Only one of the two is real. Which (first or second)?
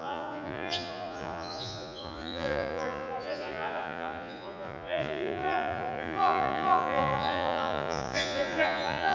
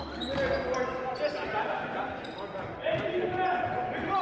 second